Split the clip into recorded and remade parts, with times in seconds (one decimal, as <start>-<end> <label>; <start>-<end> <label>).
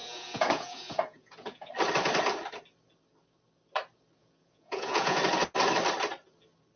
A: 0.0-1.7 remade; 1.7-4.2 recorded; 4.2-5.2 remade; 5.2-6.8 recorded